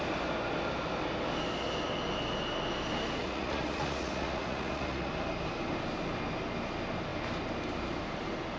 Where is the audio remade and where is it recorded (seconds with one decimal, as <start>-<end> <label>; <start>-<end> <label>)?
0.0-3.2 recorded; 3.2-5.1 remade; 5.1-8.6 recorded